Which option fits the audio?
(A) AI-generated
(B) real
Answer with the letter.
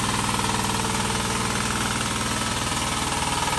B